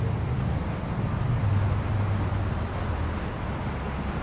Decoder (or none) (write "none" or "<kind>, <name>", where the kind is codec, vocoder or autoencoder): none